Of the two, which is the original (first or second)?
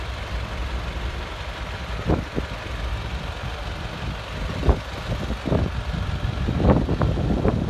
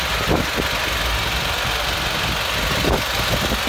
second